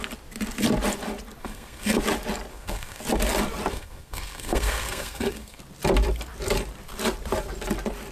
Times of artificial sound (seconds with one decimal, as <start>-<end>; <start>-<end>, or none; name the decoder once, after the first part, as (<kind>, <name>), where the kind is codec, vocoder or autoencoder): 1.4-2.0 (codec, SNAC); 2.5-3.0; 3.7-5.6